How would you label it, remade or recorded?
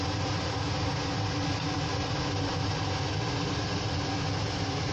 recorded